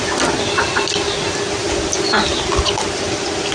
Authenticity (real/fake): real